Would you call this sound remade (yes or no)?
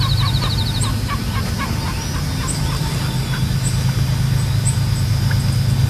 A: no